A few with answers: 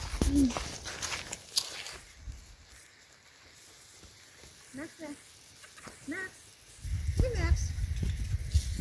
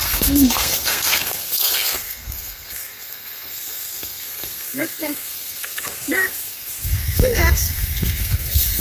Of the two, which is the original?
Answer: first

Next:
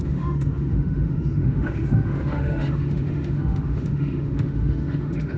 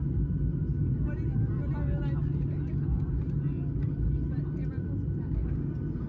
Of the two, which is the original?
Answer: second